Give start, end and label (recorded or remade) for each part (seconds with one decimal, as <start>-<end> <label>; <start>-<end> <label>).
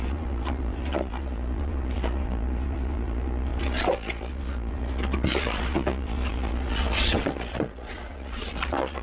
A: 0.0-9.0 remade